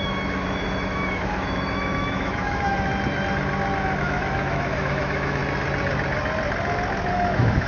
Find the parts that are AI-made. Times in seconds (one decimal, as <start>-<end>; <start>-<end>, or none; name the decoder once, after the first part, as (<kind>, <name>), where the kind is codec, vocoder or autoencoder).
0.0-2.9 (autoencoder, DAC-VAE); 4.0-5.4; 7.1-7.7